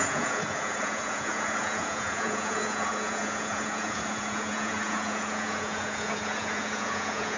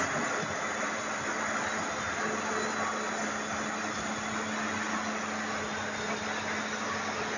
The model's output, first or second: first